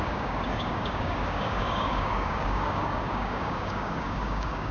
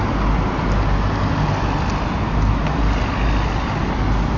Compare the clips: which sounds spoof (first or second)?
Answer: first